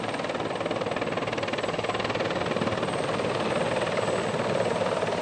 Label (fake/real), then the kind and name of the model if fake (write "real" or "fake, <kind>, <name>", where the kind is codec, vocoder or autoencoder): real